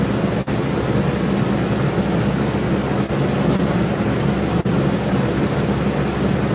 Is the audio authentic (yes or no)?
yes